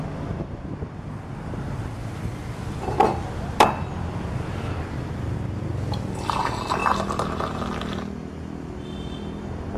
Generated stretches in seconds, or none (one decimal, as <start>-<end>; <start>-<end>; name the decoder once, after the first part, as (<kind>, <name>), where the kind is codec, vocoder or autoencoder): none